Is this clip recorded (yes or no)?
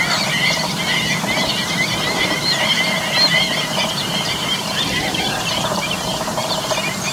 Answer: no